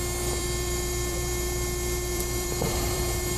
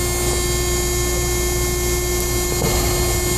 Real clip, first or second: second